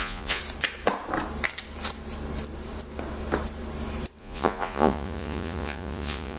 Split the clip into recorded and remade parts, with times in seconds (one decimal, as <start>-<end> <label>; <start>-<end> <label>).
0.0-0.4 remade; 0.4-4.2 recorded; 4.2-6.4 remade